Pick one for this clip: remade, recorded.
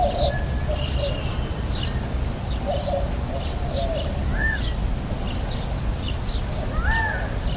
recorded